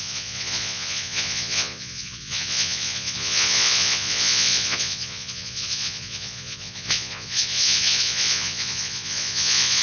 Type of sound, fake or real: fake